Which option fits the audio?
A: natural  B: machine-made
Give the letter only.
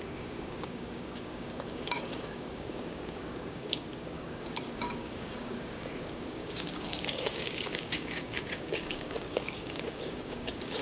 B